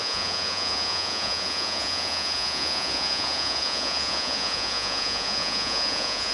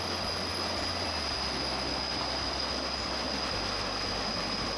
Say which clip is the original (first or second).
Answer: second